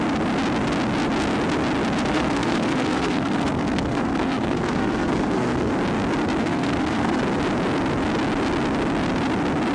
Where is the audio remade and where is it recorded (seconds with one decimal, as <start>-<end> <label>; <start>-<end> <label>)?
0.0-2.1 recorded; 2.1-5.7 remade; 5.7-6.4 recorded; 6.4-7.2 remade; 7.2-9.7 recorded